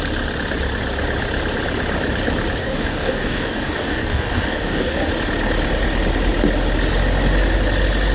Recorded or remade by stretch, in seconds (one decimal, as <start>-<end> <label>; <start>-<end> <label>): 0.0-2.6 recorded; 2.6-5.1 remade; 5.1-8.1 recorded